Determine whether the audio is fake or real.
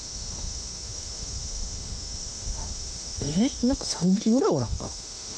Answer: fake